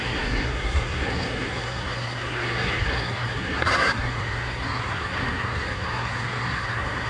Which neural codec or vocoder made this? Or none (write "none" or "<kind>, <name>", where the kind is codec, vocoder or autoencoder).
codec, SNAC